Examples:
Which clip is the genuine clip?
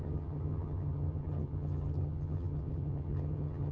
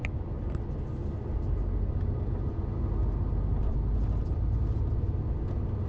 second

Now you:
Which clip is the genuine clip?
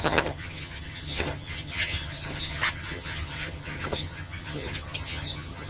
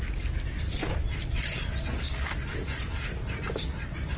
second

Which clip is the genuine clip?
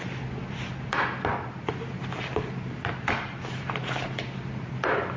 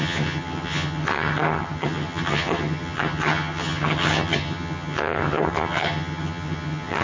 first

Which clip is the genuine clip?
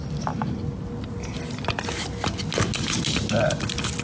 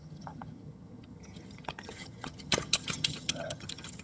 first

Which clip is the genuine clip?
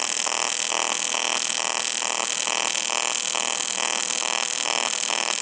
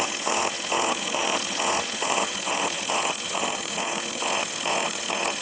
first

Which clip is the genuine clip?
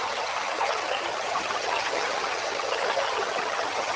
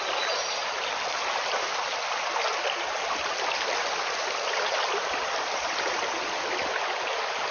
second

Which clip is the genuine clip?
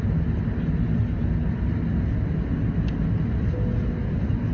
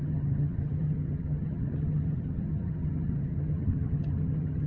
first